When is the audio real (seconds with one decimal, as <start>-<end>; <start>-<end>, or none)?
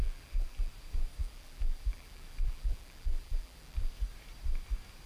0.7-1.2; 3.9-5.1